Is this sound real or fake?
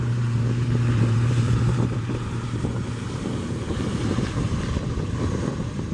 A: fake